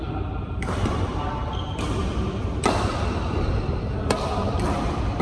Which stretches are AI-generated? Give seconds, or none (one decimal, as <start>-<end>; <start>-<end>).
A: none